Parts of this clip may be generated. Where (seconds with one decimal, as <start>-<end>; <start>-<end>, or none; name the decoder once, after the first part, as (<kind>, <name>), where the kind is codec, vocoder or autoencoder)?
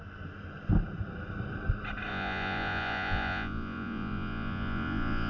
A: 2.1-5.3 (vocoder, Vocos)